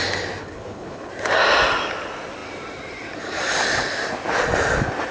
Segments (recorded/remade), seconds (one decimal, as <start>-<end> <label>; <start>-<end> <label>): 0.0-0.4 recorded; 0.4-1.1 remade; 1.1-5.1 recorded